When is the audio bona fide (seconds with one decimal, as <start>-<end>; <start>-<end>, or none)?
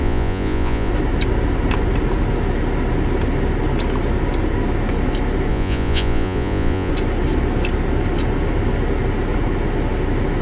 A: 0.9-5.5; 6.9-10.4